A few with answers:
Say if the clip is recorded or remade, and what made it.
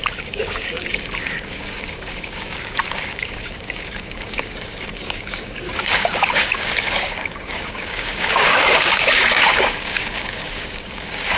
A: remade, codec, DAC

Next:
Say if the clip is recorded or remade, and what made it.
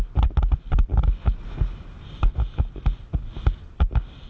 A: recorded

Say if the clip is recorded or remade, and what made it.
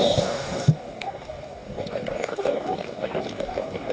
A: remade, codec, DAC